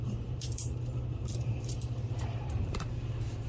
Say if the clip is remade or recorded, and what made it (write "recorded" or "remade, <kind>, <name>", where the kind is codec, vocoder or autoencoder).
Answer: remade, vocoder, BigVGAN v2